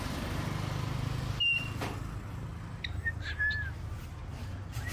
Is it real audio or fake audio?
real